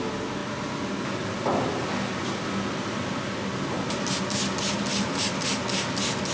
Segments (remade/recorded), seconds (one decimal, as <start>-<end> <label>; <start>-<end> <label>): 0.0-4.9 recorded; 4.9-5.4 remade; 5.4-6.3 recorded